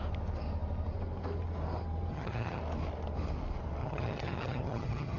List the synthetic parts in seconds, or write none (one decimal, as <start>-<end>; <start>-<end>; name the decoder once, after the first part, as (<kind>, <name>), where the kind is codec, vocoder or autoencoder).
2.1-2.6 (vocoder, HiFi-GAN); 3.8-5.2